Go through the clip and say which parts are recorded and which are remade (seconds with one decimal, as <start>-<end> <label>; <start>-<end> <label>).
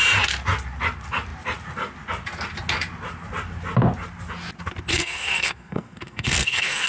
0.0-4.9 recorded; 4.9-6.9 remade